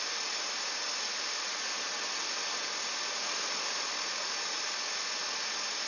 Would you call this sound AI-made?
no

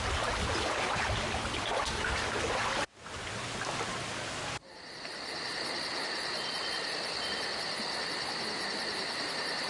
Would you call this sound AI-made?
no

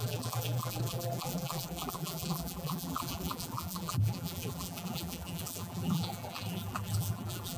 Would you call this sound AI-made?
yes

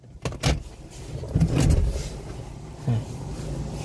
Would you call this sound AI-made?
no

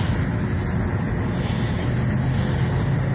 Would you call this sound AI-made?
no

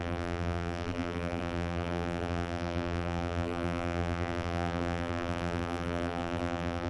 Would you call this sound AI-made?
yes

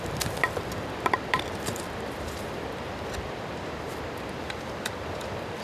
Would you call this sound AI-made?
yes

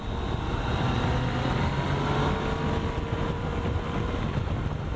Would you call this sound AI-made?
no